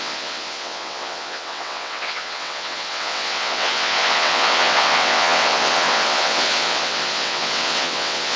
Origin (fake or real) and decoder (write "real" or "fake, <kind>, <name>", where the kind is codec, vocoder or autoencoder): fake, vocoder, WaveNeXt